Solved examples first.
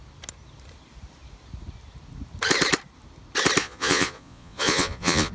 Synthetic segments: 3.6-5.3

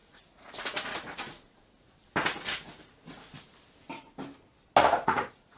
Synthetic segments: 0.0-1.9; 2.3-3.3; 4.8-5.6

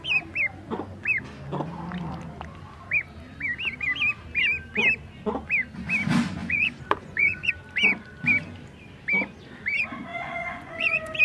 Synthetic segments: 6.4-7.5; 10.1-11.2

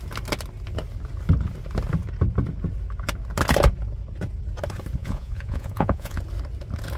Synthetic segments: 5.0-6.2

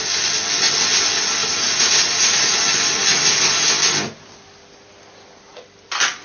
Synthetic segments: 1.4-2.6; 3.1-3.7

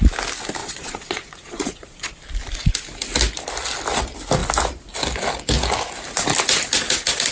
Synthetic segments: 0.6-2.2